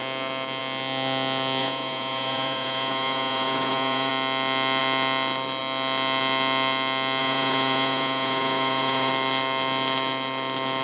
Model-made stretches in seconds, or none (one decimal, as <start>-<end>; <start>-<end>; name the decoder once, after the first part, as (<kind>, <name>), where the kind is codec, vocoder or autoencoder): 1.6-4.1 (vocoder, Vocos); 7.2-9.1